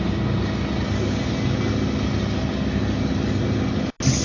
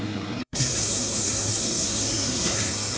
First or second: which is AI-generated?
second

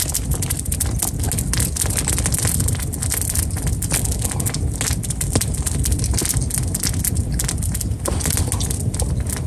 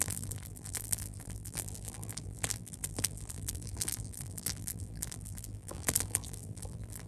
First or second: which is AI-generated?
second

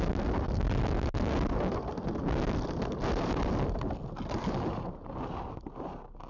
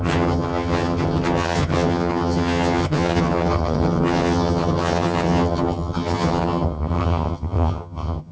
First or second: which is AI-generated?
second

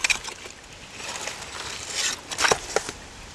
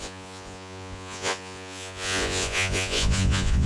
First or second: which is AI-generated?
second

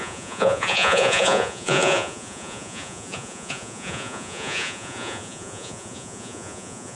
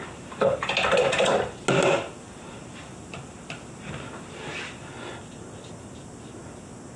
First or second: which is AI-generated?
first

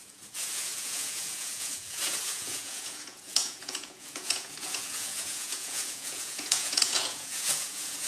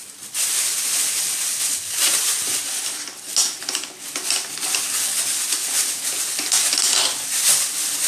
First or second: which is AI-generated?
first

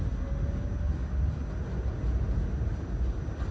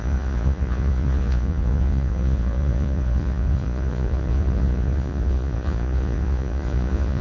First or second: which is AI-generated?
second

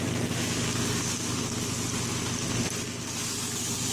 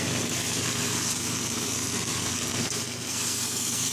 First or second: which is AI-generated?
second